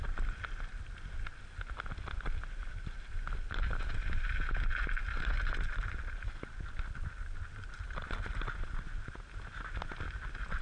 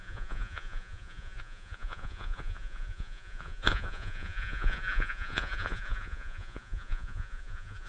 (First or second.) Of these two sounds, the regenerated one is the second